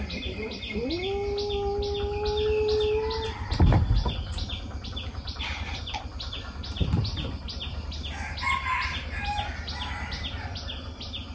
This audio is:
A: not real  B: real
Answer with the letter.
B